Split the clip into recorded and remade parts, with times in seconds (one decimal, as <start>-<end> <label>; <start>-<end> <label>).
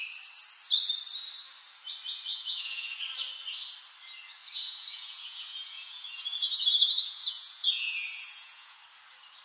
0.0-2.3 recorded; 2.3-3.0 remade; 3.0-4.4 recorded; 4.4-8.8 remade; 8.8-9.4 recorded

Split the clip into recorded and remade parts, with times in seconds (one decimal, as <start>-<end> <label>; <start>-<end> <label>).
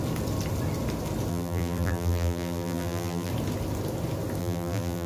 0.0-1.3 recorded; 1.3-3.3 remade; 3.3-4.4 recorded; 4.4-5.1 remade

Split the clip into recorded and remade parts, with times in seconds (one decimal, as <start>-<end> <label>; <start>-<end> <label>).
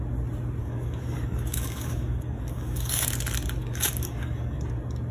0.0-0.6 recorded; 0.6-3.1 remade; 3.1-3.6 recorded; 3.6-4.6 remade; 4.6-5.1 recorded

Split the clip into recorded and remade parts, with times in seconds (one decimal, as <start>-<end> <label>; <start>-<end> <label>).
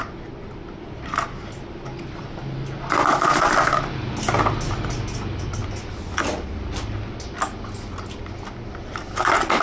0.0-9.6 recorded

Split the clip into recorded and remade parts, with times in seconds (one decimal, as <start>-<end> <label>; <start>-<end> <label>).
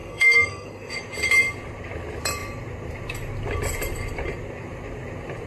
0.0-0.9 remade; 0.9-5.5 recorded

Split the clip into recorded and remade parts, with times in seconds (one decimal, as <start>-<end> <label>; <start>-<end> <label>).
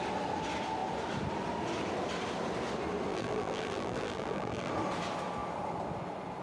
0.0-3.1 recorded; 3.1-4.7 remade; 4.7-6.4 recorded